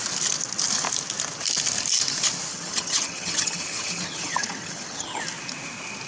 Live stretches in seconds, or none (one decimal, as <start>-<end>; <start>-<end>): 0.0-2.5; 5.2-6.1